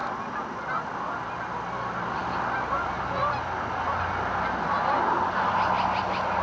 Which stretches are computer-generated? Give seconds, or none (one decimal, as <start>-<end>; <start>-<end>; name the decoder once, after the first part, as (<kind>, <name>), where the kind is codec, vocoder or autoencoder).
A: none